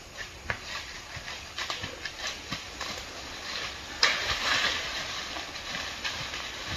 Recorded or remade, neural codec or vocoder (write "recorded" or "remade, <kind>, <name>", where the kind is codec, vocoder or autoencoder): recorded